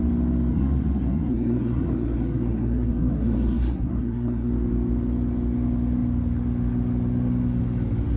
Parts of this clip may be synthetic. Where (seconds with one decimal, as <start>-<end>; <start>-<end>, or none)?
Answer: 0.5-4.5